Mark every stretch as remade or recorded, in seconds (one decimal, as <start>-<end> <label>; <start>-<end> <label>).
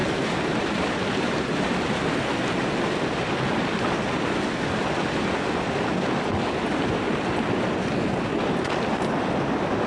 0.0-1.6 remade; 1.6-9.9 recorded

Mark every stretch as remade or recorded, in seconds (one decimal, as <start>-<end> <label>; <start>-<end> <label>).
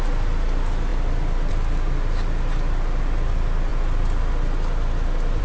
0.0-5.4 recorded